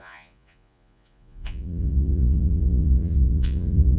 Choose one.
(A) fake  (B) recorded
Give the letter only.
A